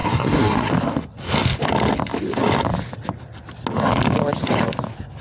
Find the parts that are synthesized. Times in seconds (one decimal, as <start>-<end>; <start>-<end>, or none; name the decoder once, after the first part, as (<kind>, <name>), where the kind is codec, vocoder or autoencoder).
0.0-0.7 (codec, SNAC)